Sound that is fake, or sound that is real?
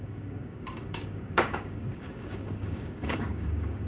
fake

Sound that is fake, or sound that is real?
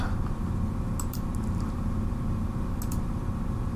real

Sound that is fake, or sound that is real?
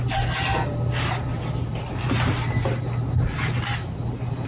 real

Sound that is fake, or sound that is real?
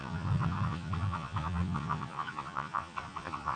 fake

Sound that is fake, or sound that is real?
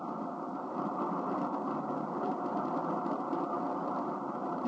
real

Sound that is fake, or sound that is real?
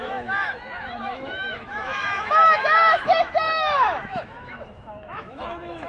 fake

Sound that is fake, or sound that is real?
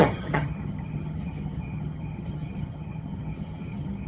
fake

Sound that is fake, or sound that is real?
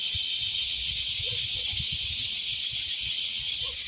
fake